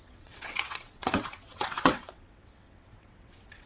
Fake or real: fake